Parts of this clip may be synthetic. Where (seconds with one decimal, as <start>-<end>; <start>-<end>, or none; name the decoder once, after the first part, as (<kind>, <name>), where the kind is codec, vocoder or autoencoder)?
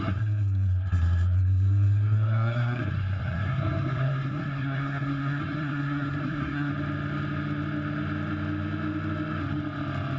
0.0-6.7 (codec, SNAC)